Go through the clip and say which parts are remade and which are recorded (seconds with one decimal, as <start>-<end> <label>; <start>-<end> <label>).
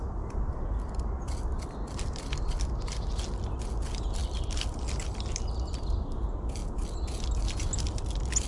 0.0-8.5 recorded